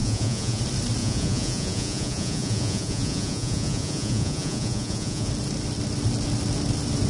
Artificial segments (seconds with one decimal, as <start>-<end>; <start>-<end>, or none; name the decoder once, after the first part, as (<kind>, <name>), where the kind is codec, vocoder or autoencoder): 0.0-0.6 (vocoder, Vocos); 1.0-5.3